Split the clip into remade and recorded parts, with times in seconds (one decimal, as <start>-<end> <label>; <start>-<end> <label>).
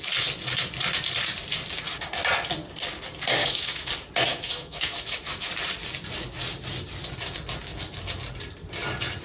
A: 0.0-3.4 recorded; 3.4-3.9 remade; 3.9-4.3 recorded; 4.3-5.5 remade; 5.5-9.2 recorded